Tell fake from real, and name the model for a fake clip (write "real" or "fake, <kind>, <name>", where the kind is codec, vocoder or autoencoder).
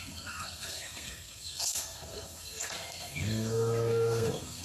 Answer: fake, codec, SNAC